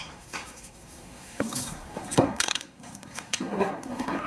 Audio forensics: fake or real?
fake